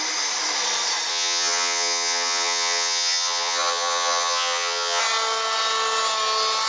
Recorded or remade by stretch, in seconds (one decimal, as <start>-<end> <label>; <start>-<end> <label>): 0.0-1.1 recorded; 1.1-5.0 remade; 5.0-6.7 recorded